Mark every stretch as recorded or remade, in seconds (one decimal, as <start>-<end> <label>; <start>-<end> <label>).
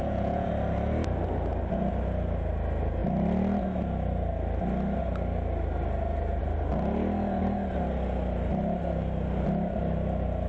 0.0-0.5 remade; 0.5-10.5 recorded